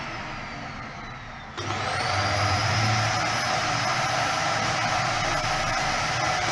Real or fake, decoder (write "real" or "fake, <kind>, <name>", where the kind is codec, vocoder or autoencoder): real